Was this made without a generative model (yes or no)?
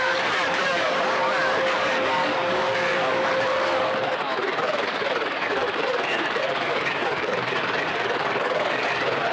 no